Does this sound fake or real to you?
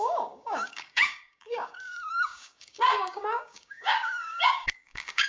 fake